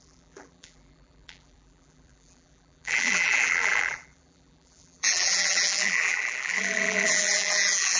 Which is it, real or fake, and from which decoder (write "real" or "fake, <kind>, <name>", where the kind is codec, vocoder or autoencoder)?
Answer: fake, vocoder, BigVGAN v2